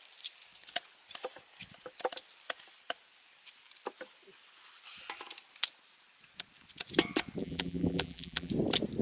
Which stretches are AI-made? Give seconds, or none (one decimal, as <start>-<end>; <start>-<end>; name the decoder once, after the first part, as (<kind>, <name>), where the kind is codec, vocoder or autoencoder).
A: 7.4-8.5 (vocoder, BigVGAN v2)